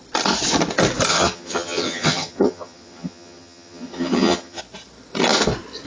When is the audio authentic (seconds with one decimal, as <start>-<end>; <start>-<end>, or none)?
0.0-1.1; 4.6-5.9